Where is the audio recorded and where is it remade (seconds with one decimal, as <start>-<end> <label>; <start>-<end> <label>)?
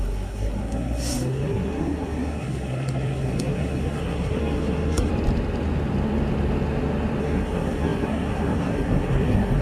0.0-5.1 remade; 5.1-7.2 recorded; 7.2-9.6 remade